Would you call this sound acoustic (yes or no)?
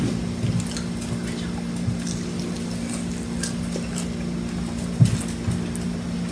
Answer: yes